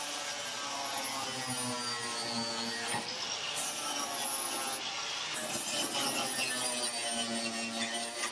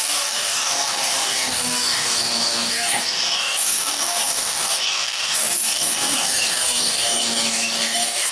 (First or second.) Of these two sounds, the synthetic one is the second